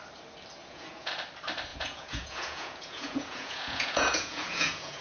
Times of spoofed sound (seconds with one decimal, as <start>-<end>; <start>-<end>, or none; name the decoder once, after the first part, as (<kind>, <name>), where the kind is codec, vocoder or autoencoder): 0.6-1.1 (vocoder, Vocos); 1.7-5.0